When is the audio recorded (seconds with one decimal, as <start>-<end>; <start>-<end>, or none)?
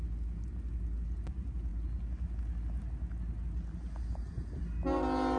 0.0-5.4